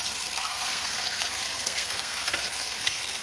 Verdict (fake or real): fake